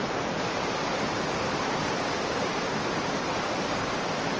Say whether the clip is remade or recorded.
remade